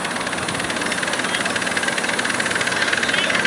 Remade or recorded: recorded